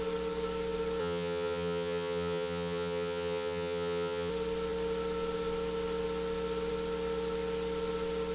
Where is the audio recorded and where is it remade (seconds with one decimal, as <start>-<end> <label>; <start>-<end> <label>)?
0.0-1.0 recorded; 1.0-4.3 remade; 4.3-8.3 recorded